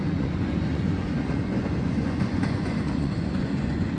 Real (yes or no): no